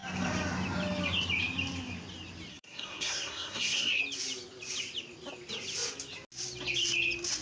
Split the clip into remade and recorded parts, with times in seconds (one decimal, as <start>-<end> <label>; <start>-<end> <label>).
0.0-2.5 recorded; 2.5-4.0 remade; 4.0-7.4 recorded